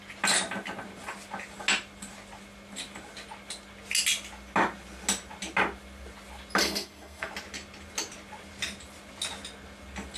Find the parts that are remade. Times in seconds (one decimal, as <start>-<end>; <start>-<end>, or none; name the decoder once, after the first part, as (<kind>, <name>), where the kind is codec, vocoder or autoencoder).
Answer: 6.6-7.3 (codec, SNAC)

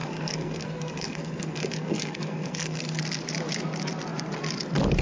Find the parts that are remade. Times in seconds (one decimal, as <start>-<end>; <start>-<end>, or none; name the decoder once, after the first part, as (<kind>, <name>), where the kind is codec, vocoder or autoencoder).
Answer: 0.0-3.0 (codec, SNAC)

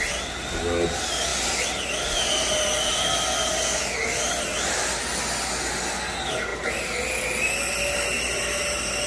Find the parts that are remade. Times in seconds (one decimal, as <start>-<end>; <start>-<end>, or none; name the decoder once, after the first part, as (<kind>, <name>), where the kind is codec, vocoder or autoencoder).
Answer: none

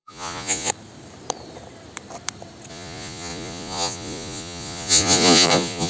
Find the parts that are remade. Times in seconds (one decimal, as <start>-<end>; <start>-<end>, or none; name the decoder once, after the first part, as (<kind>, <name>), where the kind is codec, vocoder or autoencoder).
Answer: 0.0-0.7 (vocoder, Vocos); 2.7-5.9

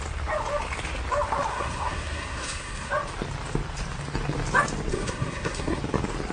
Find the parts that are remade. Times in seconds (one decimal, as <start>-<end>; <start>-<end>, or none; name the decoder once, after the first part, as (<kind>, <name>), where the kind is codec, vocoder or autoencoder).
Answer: 1.5-2.9 (codec, SNAC); 4.9-5.8

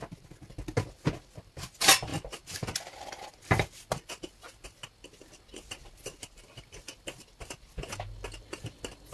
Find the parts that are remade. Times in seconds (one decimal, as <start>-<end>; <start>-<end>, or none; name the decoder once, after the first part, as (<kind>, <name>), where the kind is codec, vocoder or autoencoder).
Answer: none